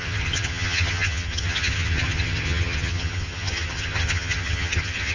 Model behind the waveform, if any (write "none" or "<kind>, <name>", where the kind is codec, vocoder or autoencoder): vocoder, HiFi-GAN